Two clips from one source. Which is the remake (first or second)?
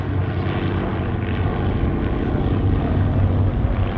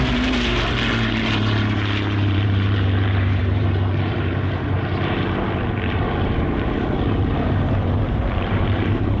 second